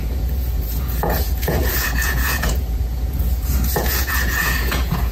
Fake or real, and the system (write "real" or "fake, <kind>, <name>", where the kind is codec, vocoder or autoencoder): fake, vocoder, Vocos